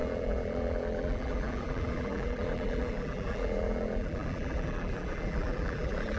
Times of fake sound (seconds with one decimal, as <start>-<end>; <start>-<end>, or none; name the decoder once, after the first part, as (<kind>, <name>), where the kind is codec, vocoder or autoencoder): 0.0-6.2 (vocoder, BigVGAN v2)